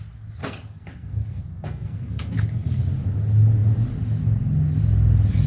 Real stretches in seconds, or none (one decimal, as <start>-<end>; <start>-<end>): 0.0-0.4; 2.8-5.5